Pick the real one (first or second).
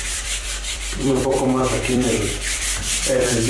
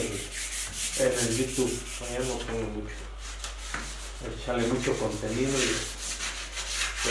second